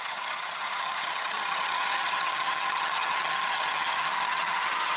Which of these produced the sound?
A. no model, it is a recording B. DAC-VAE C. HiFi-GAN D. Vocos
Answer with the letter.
C